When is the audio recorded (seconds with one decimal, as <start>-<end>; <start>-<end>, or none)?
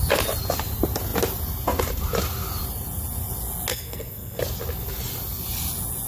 0.0-3.7; 4.4-6.1